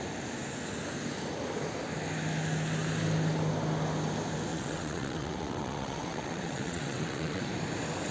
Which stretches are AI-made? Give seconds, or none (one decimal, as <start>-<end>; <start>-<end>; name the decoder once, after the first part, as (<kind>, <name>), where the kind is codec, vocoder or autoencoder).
4.5-7.5 (vocoder, WaveNeXt)